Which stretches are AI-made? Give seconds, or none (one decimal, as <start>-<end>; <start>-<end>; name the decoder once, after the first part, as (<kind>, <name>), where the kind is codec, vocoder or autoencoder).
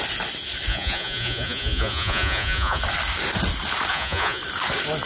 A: 0.7-2.8 (vocoder, Vocos); 3.9-4.4